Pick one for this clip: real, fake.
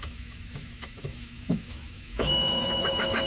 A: fake